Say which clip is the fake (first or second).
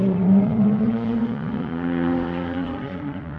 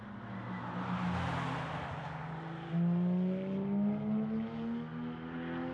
first